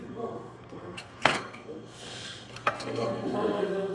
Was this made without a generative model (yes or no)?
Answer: no